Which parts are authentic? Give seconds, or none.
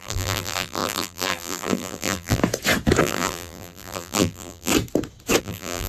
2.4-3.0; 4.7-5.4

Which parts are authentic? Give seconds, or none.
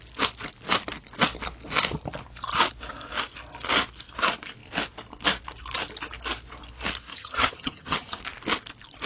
0.0-7.1; 8.2-9.1